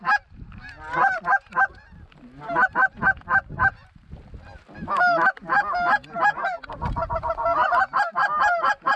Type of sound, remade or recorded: recorded